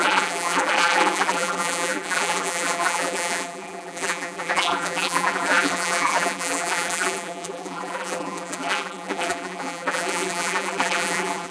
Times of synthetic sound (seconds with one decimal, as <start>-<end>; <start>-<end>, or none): 0.0-11.5